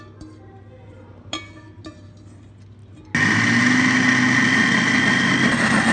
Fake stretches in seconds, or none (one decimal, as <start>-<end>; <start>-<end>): 0.8-2.1